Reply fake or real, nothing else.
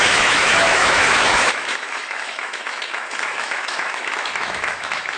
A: fake